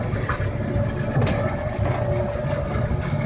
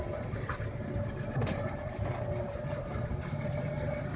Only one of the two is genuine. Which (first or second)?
first